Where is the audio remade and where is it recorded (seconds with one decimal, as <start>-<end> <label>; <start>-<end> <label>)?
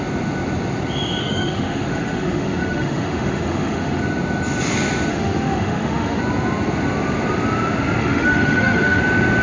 0.0-1.2 recorded; 1.2-4.0 remade; 4.0-5.1 recorded; 5.1-6.2 remade; 6.2-8.0 recorded; 8.0-9.0 remade; 9.0-9.4 recorded